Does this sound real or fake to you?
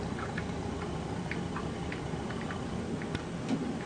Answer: real